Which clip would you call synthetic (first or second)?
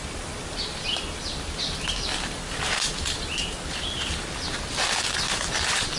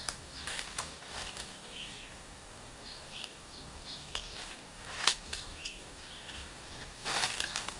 second